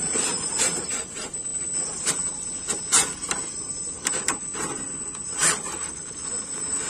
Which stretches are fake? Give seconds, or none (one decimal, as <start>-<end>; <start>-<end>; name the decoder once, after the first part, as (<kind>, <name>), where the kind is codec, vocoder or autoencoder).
0.0-5.4 (vocoder, BigVGAN v2); 6.4-6.9